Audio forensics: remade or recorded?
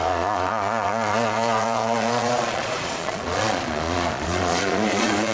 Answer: remade